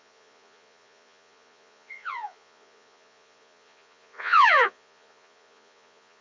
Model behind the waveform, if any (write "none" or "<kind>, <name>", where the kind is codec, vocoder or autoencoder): vocoder, Vocos